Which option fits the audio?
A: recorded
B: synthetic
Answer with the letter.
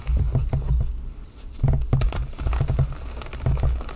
A